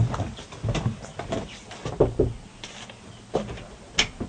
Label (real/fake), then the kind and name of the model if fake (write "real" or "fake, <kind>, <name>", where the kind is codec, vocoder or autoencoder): real